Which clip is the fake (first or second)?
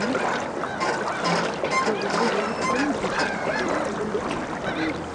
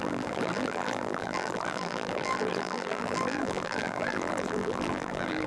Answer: second